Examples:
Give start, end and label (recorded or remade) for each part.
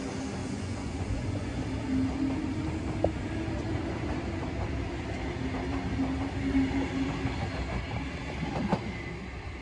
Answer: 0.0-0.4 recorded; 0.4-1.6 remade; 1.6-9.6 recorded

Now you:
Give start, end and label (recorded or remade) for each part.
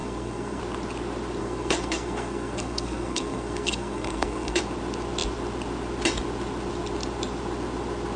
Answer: 0.0-0.6 remade; 0.6-1.4 recorded; 1.4-4.6 remade; 4.6-8.2 recorded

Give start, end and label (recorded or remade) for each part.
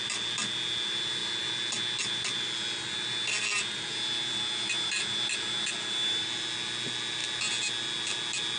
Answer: 0.0-8.6 recorded